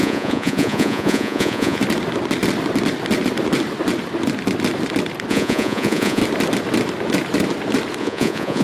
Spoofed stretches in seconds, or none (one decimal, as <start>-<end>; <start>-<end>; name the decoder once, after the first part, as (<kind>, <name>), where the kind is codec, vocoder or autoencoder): 0.0-1.8 (vocoder, Vocos); 5.3-6.2; 8.0-8.6